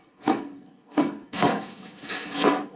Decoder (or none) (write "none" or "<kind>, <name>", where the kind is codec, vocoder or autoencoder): codec, SNAC